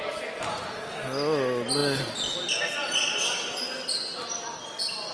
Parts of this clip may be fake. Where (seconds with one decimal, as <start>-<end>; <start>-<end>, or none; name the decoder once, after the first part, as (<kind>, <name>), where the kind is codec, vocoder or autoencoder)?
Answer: none